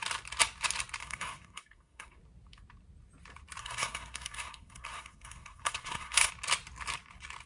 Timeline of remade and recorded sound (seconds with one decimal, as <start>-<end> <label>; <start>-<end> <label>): 0.0-1.0 recorded; 1.0-2.2 remade; 2.2-3.6 recorded; 3.6-6.3 remade; 6.3-7.5 recorded